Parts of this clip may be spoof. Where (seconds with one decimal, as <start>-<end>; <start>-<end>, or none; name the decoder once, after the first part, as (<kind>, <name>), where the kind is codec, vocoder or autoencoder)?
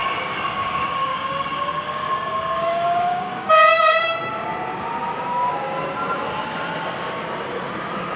0.0-4.3 (codec, DAC)